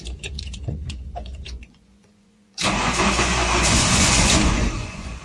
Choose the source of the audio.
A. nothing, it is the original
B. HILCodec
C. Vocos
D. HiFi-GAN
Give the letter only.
C